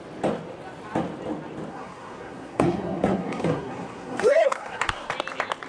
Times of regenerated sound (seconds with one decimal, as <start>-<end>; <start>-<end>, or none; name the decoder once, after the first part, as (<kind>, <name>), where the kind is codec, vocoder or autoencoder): 1.7-5.1 (codec, SNAC)